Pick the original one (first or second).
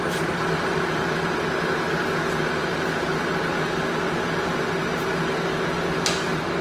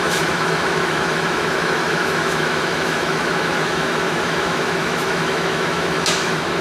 first